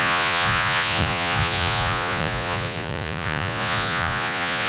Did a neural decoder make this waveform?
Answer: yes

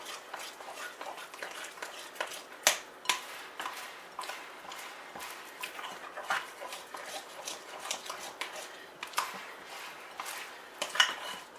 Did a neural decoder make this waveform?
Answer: no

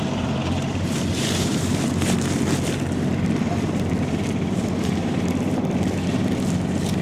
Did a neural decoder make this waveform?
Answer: yes